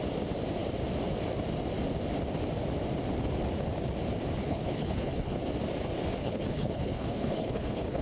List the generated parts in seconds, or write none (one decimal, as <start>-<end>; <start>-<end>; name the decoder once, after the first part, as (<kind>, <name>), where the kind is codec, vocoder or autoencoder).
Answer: 4.4-5.4 (codec, HILCodec); 6.2-8.0